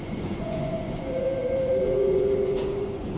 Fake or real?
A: fake